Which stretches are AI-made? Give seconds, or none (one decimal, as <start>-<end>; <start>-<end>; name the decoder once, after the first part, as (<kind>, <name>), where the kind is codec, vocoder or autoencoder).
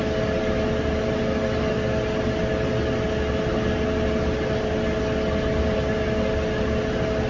none